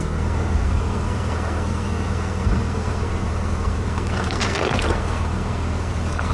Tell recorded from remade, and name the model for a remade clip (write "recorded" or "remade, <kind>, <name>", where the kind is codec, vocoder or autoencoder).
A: remade, codec, SNAC